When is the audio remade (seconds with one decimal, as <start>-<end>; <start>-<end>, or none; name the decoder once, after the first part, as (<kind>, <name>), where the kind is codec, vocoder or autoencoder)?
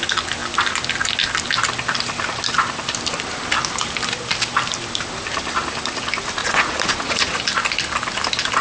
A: 6.4-7.4 (vocoder, Vocos)